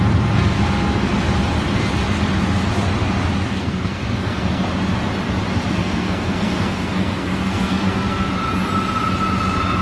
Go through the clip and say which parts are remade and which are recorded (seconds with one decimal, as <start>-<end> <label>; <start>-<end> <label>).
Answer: 0.0-3.5 recorded; 3.5-4.6 remade; 4.6-5.8 recorded; 5.8-8.3 remade; 8.3-9.8 recorded

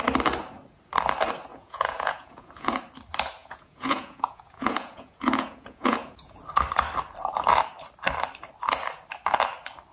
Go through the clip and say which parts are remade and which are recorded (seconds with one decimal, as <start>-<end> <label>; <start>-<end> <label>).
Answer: 0.0-1.5 recorded; 1.5-2.8 remade; 2.8-3.4 recorded; 3.4-6.4 remade; 6.4-9.9 recorded

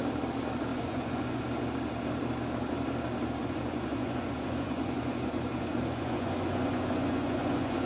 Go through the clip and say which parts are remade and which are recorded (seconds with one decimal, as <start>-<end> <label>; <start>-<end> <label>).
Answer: 0.0-0.7 recorded; 0.7-1.4 remade; 1.4-3.4 recorded; 3.4-7.9 remade

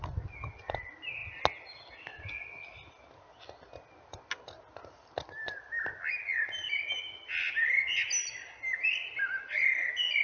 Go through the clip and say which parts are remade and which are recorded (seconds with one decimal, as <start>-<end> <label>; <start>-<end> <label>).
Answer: 0.0-10.2 recorded

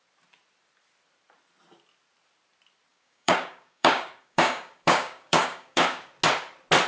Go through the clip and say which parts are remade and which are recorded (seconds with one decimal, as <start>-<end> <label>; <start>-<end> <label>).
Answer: 0.0-2.9 recorded; 2.9-6.1 remade; 6.1-6.9 recorded